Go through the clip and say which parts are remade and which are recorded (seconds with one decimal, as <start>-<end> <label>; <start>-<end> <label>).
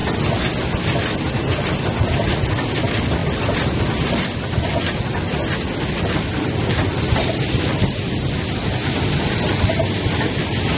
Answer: 0.0-10.8 recorded